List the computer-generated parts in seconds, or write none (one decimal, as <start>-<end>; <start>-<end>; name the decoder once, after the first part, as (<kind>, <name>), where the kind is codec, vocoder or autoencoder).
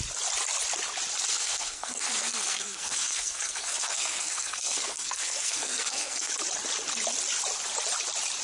1.3-6.3 (codec, SNAC)